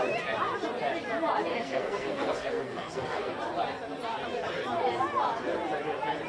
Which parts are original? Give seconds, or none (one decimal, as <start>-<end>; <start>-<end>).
0.0-1.5; 3.3-6.3